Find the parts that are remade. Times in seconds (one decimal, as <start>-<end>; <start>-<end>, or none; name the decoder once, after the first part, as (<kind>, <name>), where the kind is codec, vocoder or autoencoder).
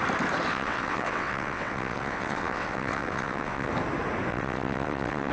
0.5-3.7 (vocoder, WaveNeXt); 4.3-5.3